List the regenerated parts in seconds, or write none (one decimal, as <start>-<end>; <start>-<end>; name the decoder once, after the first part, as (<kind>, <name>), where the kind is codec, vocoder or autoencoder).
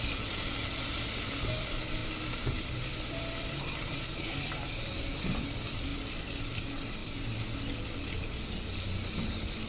0.0-7.0 (vocoder, BigVGAN v2); 8.8-9.7